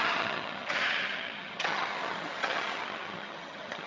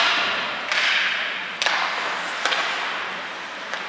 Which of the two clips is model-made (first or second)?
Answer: first